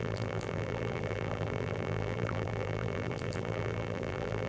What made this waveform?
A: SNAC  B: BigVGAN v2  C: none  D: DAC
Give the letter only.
B